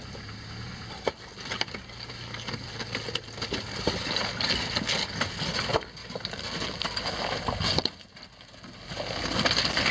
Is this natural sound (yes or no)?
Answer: yes